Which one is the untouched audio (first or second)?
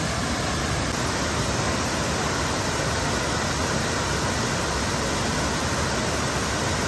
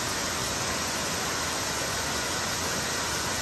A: first